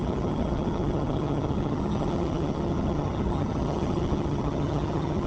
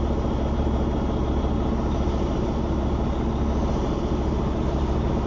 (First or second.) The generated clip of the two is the first